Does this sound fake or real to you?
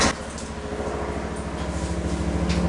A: real